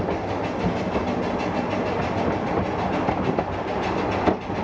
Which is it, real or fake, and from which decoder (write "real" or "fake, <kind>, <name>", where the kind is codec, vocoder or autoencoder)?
real